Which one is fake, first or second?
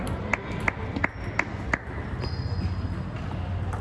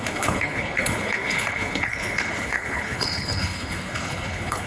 second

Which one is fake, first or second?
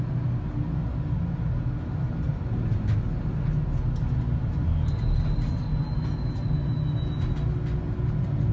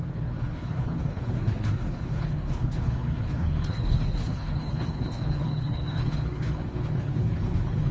second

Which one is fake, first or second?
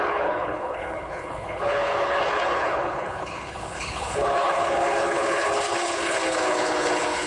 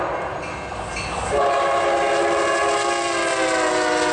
first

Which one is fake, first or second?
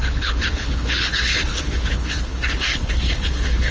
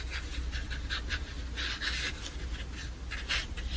first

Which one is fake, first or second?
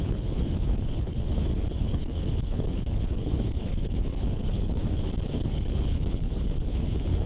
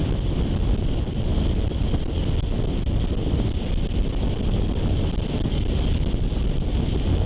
first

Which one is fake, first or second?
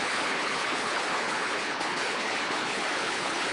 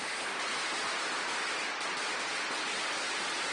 first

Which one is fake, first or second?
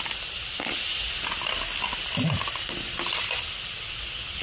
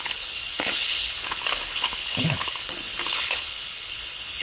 second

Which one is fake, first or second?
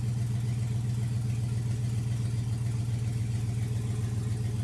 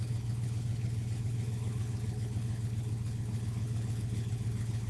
second